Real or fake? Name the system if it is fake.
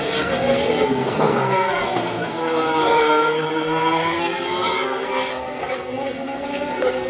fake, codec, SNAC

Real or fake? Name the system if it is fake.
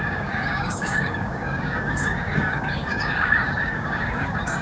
fake, codec, DAC